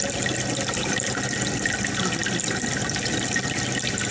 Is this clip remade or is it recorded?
recorded